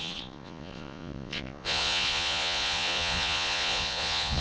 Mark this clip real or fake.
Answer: fake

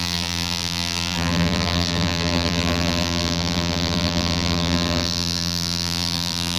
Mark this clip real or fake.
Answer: fake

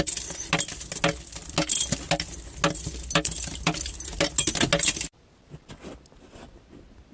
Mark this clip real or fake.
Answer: real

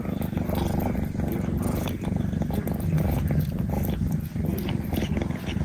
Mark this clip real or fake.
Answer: fake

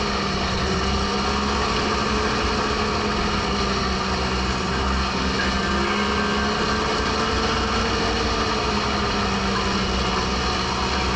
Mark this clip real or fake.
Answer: real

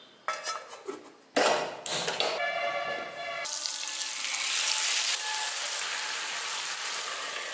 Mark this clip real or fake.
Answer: real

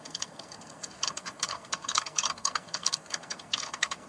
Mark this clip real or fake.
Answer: fake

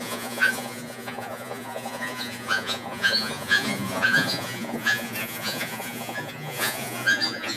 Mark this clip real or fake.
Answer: fake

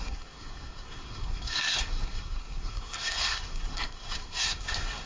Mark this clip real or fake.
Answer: fake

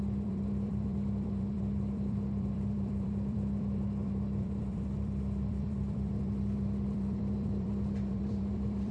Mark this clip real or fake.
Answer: fake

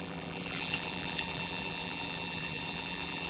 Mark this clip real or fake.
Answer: fake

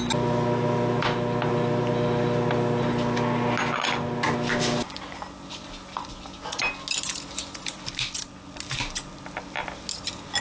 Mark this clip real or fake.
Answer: real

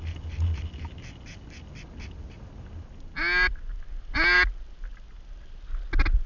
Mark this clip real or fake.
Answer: real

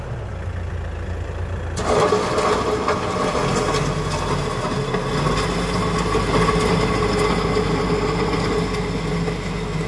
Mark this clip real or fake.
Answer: real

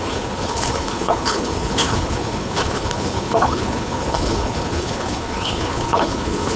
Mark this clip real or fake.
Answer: fake